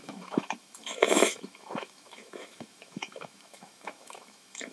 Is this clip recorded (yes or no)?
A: no